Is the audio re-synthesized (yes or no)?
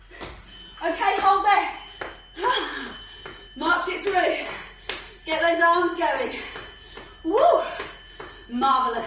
no